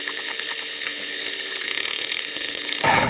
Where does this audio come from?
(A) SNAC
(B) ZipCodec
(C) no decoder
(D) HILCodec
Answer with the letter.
D